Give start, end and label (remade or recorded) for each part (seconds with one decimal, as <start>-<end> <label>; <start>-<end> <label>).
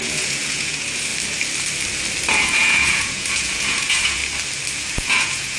0.0-1.1 remade; 1.1-2.3 recorded; 2.3-4.2 remade; 4.2-4.9 recorded; 4.9-5.6 remade